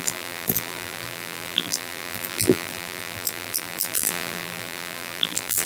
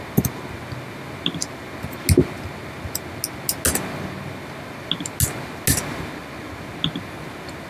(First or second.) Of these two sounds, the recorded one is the second